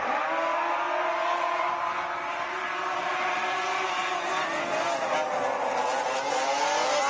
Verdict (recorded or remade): recorded